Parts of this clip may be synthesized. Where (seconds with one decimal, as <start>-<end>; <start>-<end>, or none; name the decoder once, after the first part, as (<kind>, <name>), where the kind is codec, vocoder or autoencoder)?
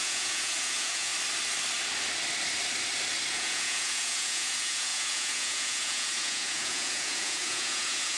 0.0-1.1 (vocoder, Vocos); 3.3-8.2